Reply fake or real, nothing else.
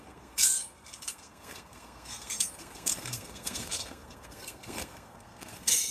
fake